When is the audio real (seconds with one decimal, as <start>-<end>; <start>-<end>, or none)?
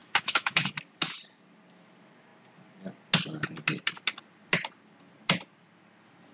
0.7-6.3